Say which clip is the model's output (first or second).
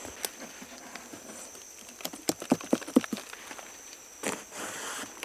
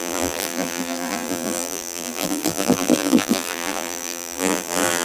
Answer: second